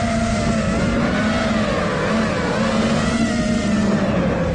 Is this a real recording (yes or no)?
yes